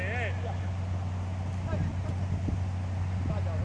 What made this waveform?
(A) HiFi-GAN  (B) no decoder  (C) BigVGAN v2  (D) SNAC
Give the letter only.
B